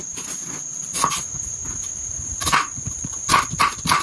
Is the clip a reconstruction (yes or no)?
yes